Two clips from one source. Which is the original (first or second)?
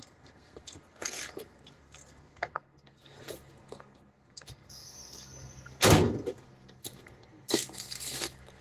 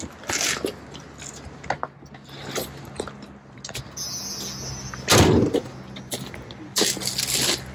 second